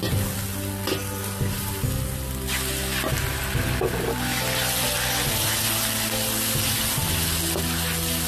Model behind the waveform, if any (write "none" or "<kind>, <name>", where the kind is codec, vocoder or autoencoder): none